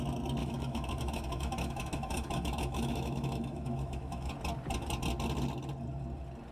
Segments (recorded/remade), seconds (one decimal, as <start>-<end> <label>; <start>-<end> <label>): 0.0-0.4 recorded; 0.4-4.3 remade; 4.3-6.5 recorded